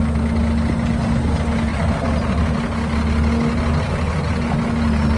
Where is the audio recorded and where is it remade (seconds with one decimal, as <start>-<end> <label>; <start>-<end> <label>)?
0.0-5.2 recorded